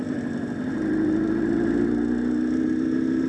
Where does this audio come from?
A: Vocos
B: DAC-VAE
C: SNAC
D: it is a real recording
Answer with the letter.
D